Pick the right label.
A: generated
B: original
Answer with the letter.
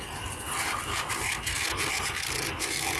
B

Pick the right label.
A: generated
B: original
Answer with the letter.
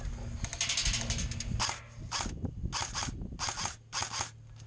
B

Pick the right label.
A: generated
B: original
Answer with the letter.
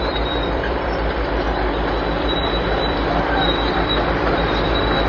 A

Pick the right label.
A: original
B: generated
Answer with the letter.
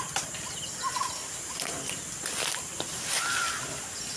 B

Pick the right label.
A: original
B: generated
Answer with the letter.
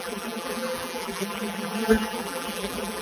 B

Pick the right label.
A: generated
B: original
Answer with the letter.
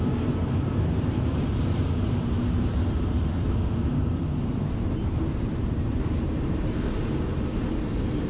A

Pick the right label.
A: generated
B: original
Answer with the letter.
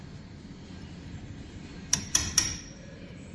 A